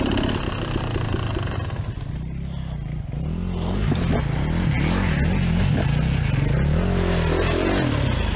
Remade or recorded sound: recorded